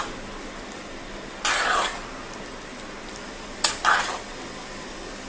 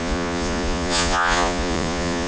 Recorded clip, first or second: first